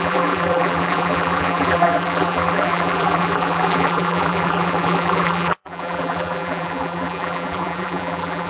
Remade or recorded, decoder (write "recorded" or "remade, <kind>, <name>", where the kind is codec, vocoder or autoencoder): remade, vocoder, BigVGAN v2